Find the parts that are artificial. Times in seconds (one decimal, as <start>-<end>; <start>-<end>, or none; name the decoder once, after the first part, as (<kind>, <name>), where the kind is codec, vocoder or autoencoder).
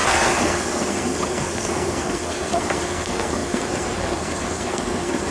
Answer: 0.0-5.3 (codec, SNAC)